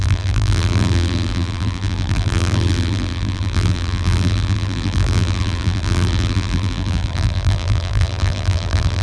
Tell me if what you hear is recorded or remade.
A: remade